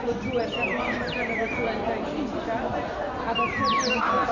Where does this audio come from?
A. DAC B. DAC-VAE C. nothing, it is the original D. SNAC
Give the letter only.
C